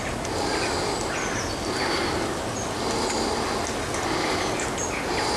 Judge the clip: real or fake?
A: real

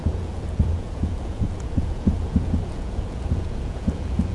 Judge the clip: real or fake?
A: fake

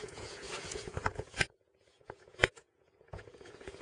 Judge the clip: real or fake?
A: fake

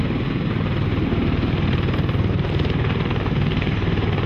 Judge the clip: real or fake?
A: fake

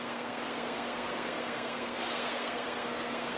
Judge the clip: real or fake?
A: fake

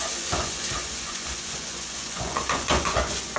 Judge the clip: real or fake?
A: fake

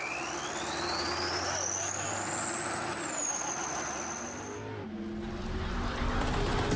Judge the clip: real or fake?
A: real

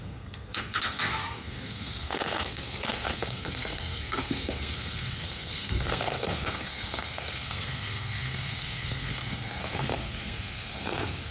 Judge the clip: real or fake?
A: fake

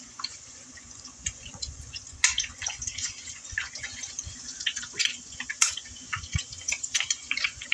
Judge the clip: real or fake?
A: fake